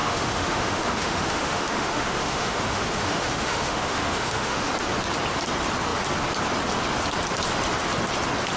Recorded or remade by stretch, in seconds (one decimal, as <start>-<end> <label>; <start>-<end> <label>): 0.0-4.7 remade; 4.7-8.6 recorded